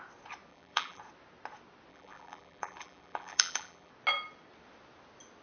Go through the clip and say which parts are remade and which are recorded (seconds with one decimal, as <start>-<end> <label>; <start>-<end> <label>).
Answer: 0.0-0.5 recorded; 0.5-1.0 remade; 1.0-1.9 recorded; 1.9-3.9 remade; 3.9-5.4 recorded

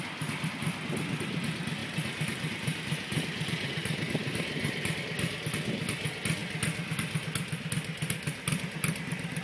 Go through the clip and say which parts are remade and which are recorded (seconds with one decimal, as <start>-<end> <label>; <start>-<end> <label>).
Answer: 0.0-1.8 recorded; 1.8-5.0 remade; 5.0-9.4 recorded

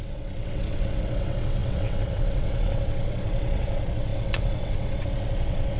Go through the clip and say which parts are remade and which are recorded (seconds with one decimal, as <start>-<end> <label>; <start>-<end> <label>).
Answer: 0.0-5.8 remade

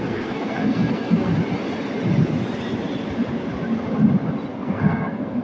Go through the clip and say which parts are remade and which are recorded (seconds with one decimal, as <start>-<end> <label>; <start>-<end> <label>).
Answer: 0.0-1.3 remade; 1.3-4.5 recorded; 4.5-5.4 remade

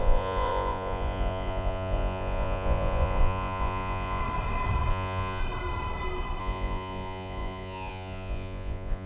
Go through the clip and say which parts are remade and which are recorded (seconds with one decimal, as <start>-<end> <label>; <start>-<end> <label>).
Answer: 0.0-4.2 remade; 4.2-4.9 recorded; 4.9-5.4 remade; 5.4-6.4 recorded; 6.4-9.1 remade

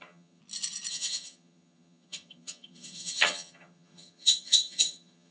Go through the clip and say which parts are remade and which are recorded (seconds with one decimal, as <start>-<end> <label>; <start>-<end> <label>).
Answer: 0.0-0.4 remade; 0.4-0.9 recorded; 0.9-5.3 remade

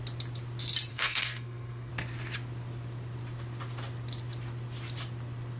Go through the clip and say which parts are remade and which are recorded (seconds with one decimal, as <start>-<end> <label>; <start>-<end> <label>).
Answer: 0.0-0.9 recorded; 0.9-1.9 remade; 1.9-5.6 recorded

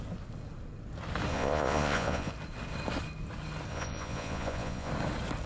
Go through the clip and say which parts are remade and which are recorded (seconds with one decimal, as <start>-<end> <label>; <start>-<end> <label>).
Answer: 0.0-1.3 recorded; 1.3-2.3 remade; 2.3-3.7 recorded; 3.7-4.9 remade; 4.9-5.5 recorded